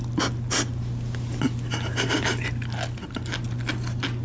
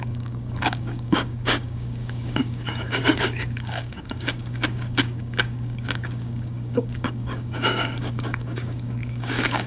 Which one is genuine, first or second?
first